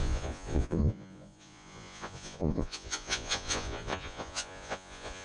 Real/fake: fake